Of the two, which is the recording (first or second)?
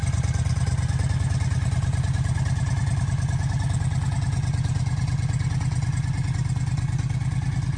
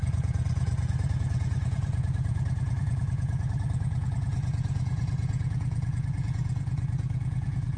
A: first